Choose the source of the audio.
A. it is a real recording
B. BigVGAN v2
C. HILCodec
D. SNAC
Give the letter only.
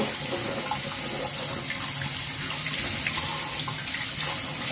A